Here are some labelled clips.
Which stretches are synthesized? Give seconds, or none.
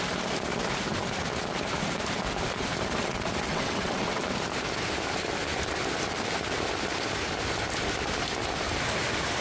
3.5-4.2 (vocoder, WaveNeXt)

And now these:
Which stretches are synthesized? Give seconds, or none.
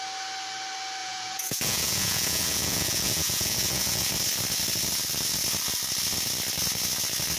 1.0-4.1 (vocoder, Vocos)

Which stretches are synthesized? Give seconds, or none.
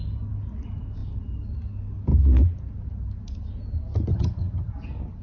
4.1-4.7 (vocoder, HiFi-GAN)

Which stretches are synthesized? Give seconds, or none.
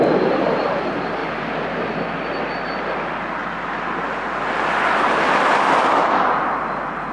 0.0-1.2 (vocoder, BigVGAN v2); 2.6-3.4; 6.5-7.1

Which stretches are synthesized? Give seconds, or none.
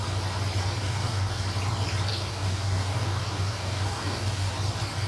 0.8-1.4 (codec, DAC); 2.1-4.5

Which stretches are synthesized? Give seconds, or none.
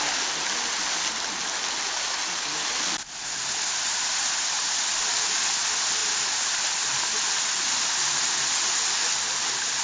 none